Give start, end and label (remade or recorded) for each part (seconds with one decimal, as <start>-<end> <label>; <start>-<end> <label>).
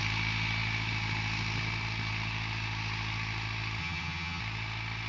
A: 0.0-3.8 recorded; 3.8-4.4 remade; 4.4-5.1 recorded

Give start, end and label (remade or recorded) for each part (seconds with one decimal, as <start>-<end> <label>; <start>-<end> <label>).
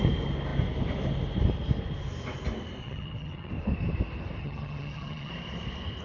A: 0.0-2.8 recorded; 2.8-3.5 remade; 3.5-4.4 recorded; 4.4-5.3 remade; 5.3-6.0 recorded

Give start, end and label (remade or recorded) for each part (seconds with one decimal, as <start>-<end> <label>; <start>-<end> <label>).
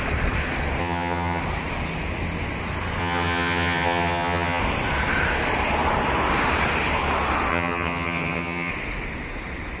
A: 0.0-0.8 recorded; 0.8-1.4 remade; 1.4-3.0 recorded; 3.0-4.6 remade; 4.6-7.5 recorded; 7.5-8.7 remade; 8.7-9.8 recorded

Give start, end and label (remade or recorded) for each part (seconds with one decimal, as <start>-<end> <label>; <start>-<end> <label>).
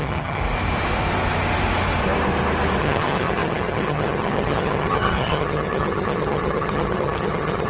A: 0.0-0.4 remade; 0.4-2.8 recorded; 2.8-7.7 remade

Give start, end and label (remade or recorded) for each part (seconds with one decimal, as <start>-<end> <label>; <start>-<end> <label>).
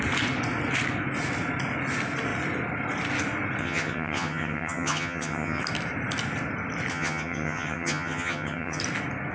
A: 0.0-3.6 recorded; 3.6-5.6 remade; 5.6-6.9 recorded; 6.9-8.8 remade; 8.8-9.3 recorded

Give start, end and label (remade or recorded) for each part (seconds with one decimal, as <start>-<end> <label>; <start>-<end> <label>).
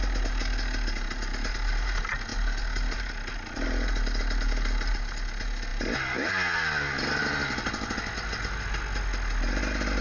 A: 0.0-10.0 recorded